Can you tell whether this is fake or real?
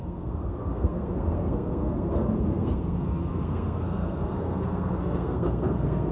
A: fake